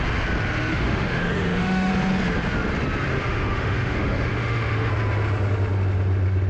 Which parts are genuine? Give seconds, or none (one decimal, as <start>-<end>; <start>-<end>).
0.0-0.7; 1.9-3.1; 4.9-6.5